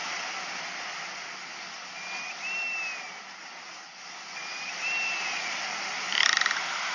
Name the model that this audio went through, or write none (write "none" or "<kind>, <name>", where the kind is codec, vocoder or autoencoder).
none